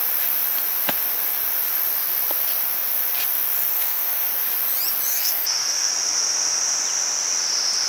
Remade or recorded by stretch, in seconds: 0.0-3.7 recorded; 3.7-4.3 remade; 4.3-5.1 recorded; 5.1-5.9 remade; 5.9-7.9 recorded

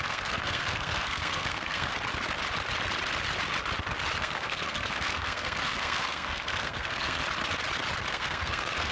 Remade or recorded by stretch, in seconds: 0.0-1.9 remade; 1.9-4.2 recorded; 4.2-7.2 remade; 7.2-8.1 recorded; 8.1-8.9 remade

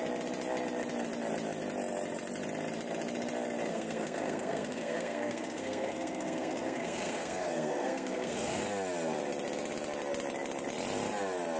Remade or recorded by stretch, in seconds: 0.0-3.7 recorded; 3.7-8.6 remade; 8.6-11.6 recorded

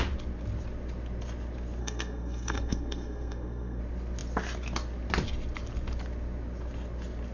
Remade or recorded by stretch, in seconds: 0.0-1.8 recorded; 1.8-3.8 remade; 3.8-7.3 recorded

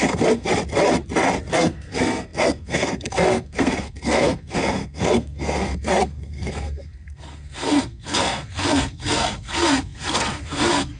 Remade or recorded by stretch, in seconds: 0.0-0.5 remade; 0.5-1.5 recorded; 1.5-11.0 remade

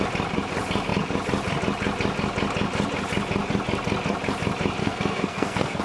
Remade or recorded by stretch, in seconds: 0.0-4.8 recorded; 4.8-5.8 remade

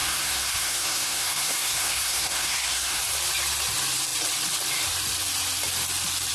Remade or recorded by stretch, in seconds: 0.0-3.0 remade; 3.0-6.3 recorded